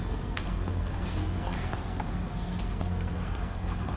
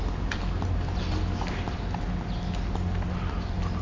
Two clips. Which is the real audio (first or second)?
second